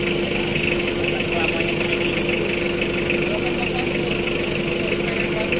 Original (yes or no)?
yes